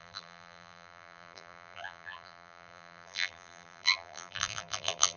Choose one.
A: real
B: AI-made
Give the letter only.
B